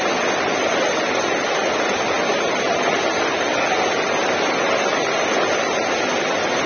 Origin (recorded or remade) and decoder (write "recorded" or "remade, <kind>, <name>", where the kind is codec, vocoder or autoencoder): recorded